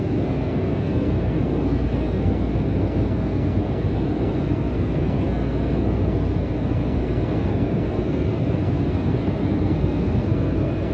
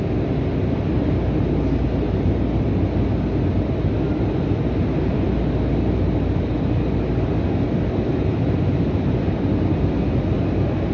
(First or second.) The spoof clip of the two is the first